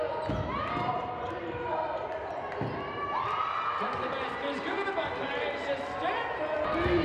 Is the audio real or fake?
real